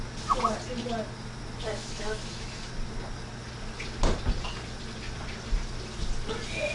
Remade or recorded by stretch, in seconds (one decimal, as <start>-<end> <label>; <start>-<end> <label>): 0.0-1.8 recorded; 1.8-2.7 remade; 2.7-6.7 recorded